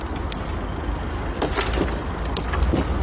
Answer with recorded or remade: recorded